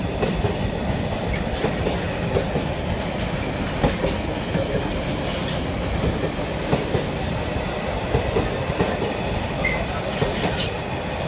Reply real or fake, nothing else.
real